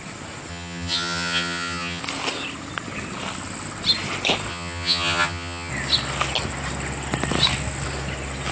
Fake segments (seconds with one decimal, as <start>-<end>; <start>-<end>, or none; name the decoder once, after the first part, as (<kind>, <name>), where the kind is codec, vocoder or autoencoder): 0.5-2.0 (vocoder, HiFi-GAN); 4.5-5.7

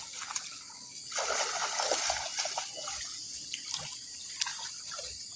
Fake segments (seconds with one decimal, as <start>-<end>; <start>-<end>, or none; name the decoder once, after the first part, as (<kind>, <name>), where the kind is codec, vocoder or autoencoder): none

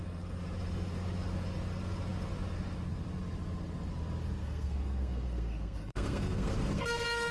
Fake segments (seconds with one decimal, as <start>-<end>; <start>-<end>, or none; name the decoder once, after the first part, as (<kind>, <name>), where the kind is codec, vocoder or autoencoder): 4.4-7.3 (codec, SNAC)

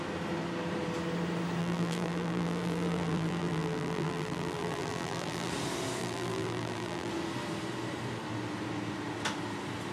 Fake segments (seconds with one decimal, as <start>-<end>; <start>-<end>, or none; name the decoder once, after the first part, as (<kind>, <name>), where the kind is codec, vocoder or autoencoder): 1.6-5.5 (vocoder, BigVGAN v2); 6.0-7.1

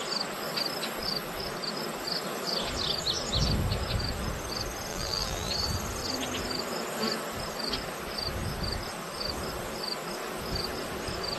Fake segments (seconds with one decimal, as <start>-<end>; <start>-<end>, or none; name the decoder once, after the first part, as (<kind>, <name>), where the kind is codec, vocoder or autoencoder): 4.9-5.5 (vocoder, BigVGAN v2)

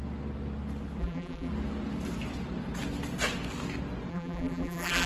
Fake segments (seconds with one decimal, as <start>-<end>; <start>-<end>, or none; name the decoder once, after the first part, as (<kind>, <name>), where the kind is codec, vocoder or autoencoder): 1.0-1.5 (vocoder, BigVGAN v2); 4.1-5.1

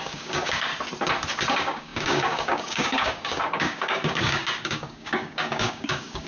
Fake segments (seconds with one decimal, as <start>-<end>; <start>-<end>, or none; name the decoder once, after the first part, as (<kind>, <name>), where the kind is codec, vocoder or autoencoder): 0.0-0.7 (codec, DAC); 1.5-6.3

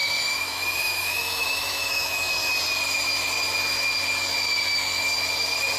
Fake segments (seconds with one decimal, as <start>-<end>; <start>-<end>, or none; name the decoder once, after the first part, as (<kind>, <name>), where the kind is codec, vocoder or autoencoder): 0.0-2.5 (autoencoder, DAC-VAE)